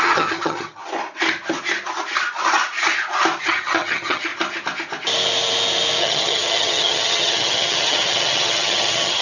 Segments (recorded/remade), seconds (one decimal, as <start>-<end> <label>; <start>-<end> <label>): 0.0-0.8 remade; 0.8-3.4 recorded; 3.4-4.3 remade; 4.3-6.0 recorded; 6.0-9.2 remade